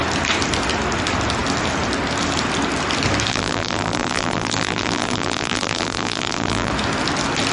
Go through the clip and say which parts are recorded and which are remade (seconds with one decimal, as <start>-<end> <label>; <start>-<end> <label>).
0.0-3.3 recorded; 3.3-6.7 remade; 6.7-7.5 recorded